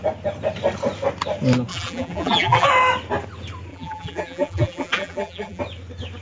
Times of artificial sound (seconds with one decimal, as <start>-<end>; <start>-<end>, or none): 1.7-2.7; 3.7-5.6